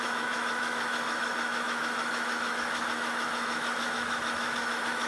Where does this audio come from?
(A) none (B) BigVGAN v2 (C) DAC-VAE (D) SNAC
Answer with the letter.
C